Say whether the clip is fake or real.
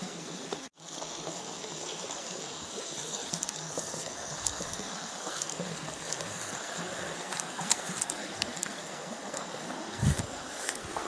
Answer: fake